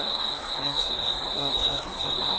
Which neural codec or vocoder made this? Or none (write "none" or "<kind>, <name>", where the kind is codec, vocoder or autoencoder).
codec, SNAC